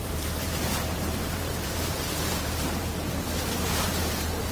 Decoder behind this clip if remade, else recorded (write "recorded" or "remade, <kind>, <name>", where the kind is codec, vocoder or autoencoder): remade, vocoder, BigVGAN v2